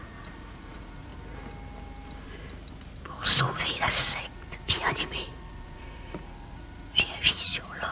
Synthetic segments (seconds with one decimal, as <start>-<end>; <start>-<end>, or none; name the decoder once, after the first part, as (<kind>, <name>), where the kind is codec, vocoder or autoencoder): 0.0-1.1 (vocoder, Vocos); 3.4-7.9